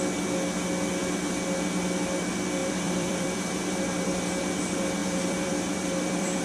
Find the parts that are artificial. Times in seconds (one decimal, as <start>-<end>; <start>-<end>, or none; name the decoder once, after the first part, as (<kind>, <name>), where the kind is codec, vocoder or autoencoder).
2.6-4.4 (vocoder, BigVGAN v2); 5.0-6.4